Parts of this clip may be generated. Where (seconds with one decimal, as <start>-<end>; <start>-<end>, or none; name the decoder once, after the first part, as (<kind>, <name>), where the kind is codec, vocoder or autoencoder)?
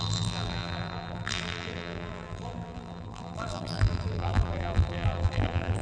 0.0-5.8 (vocoder, BigVGAN v2)